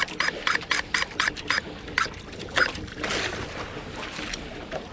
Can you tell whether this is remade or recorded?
recorded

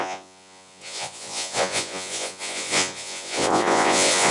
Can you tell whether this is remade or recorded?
remade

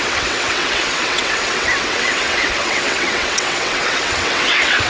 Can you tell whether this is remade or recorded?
remade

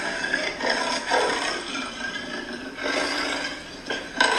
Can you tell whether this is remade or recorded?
recorded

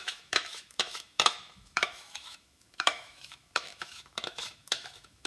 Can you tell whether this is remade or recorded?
remade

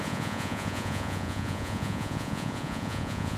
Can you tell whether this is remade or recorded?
remade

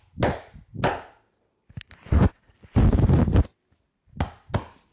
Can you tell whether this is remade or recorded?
recorded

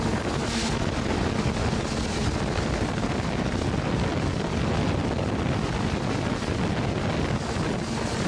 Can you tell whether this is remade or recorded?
recorded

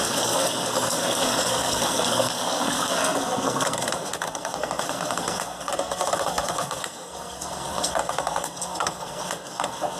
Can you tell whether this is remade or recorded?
remade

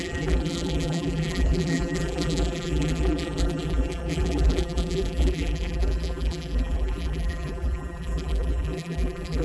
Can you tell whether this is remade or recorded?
remade